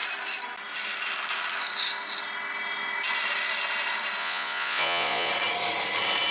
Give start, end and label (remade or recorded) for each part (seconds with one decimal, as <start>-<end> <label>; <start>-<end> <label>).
0.0-4.2 recorded; 4.2-5.3 remade; 5.3-6.3 recorded